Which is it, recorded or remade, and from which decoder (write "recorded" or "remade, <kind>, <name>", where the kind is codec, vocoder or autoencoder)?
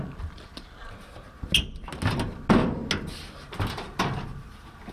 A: recorded